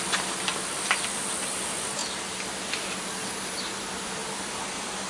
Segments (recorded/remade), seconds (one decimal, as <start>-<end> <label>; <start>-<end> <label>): 0.0-5.1 recorded